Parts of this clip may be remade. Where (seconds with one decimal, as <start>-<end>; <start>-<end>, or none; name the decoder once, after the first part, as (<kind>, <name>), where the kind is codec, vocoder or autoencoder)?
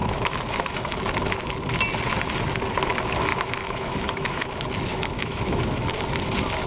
0.0-0.9 (autoencoder, DAC-VAE); 3.3-4.5; 4.9-5.9